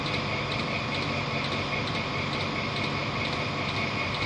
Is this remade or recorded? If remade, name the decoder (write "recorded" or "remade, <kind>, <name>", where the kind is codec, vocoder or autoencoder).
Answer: recorded